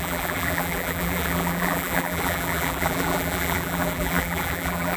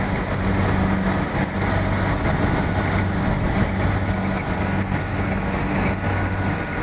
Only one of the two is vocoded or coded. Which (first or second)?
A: first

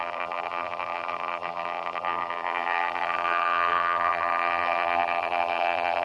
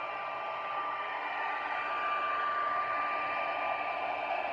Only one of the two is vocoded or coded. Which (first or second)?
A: first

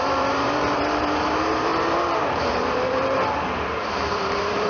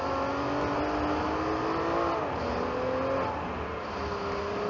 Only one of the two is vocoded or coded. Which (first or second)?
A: first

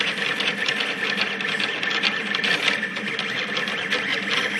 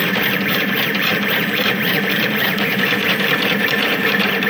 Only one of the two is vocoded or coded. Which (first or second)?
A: second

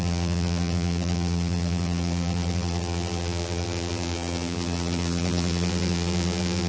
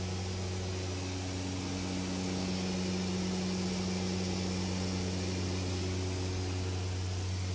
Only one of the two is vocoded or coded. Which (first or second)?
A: first